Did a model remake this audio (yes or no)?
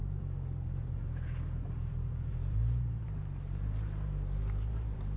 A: yes